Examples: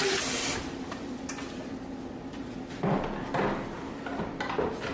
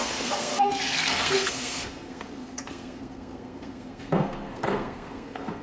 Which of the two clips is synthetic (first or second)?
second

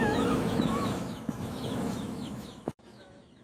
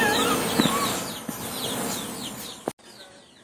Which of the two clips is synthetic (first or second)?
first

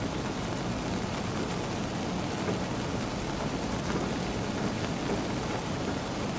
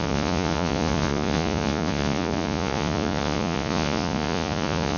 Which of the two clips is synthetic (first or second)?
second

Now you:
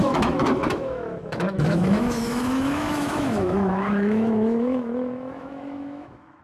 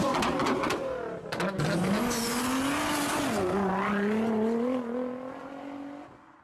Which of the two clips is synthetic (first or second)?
first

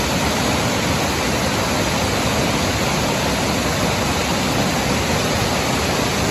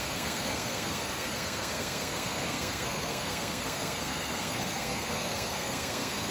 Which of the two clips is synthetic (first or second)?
second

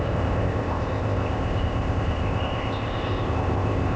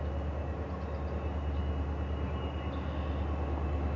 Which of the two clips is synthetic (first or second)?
first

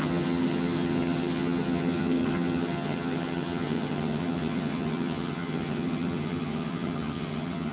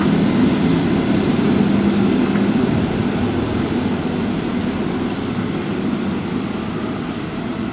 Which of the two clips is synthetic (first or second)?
first